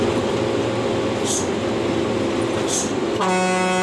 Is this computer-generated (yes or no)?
no